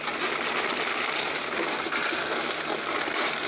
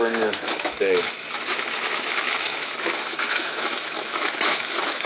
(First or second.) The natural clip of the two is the first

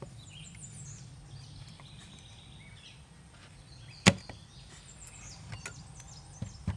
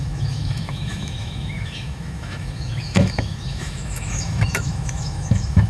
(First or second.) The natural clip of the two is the first